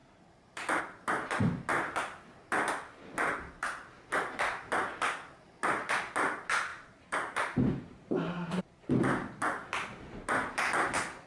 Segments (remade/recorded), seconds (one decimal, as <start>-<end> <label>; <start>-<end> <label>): 0.0-6.7 recorded; 6.7-8.6 remade; 8.6-11.3 recorded